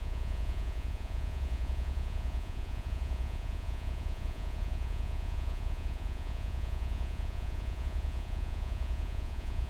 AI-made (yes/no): yes